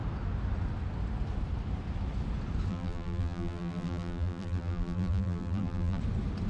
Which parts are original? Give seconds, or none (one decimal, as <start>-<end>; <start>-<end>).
0.0-2.7; 6.0-6.5